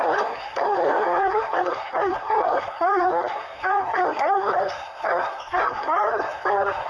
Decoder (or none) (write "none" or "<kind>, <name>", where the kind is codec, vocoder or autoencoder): codec, SNAC